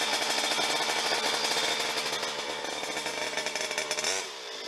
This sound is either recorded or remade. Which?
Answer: recorded